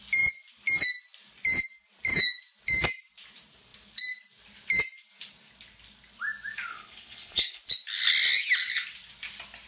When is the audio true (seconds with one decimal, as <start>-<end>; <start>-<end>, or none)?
0.0-6.7; 7.6-9.7